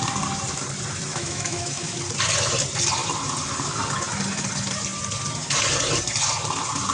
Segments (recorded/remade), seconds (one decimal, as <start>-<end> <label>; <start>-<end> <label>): 0.0-1.1 recorded; 1.1-2.0 remade; 2.0-6.9 recorded